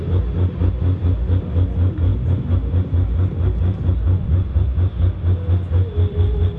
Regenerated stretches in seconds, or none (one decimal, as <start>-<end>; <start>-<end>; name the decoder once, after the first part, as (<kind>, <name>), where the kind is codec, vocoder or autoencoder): none